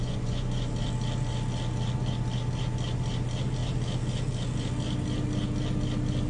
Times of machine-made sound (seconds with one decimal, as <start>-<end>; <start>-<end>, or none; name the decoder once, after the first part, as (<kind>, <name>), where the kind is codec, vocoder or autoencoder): 0.0-0.7 (vocoder, Vocos)